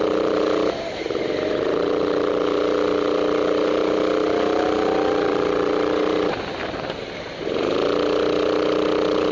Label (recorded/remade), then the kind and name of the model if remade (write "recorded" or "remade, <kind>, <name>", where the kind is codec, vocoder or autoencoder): recorded